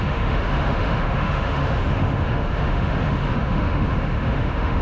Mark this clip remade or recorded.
remade